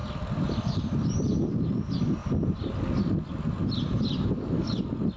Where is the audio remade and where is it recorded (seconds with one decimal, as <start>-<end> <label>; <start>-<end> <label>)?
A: 0.0-1.5 remade; 1.5-5.2 recorded